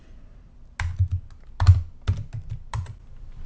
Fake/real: real